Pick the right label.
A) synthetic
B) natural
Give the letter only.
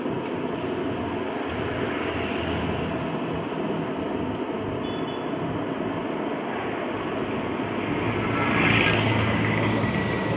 B